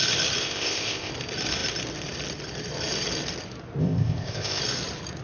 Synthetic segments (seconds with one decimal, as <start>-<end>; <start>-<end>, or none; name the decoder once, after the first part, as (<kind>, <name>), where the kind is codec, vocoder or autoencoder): 0.4-1.1 (codec, ZipCodec); 3.8-4.6